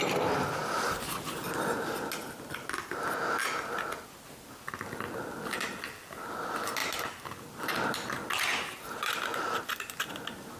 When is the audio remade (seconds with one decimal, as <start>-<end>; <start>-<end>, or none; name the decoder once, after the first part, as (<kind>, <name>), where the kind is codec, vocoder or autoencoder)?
none